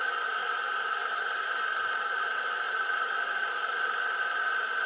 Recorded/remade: recorded